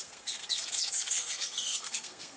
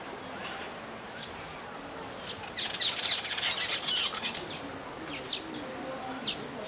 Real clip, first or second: second